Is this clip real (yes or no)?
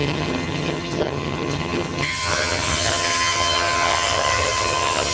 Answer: no